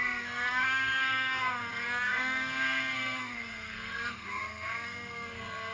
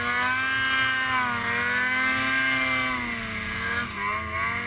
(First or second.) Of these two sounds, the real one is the second